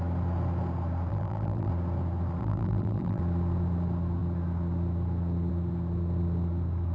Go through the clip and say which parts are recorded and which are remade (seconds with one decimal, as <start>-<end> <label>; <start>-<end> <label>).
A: 0.0-1.1 recorded; 1.1-1.7 remade; 1.7-2.4 recorded; 2.4-3.2 remade; 3.2-6.9 recorded